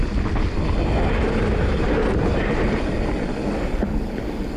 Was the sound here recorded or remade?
recorded